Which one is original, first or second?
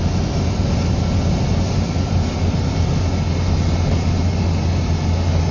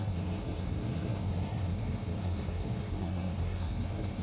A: first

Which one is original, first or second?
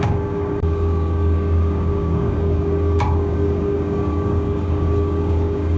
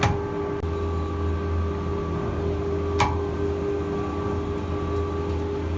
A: second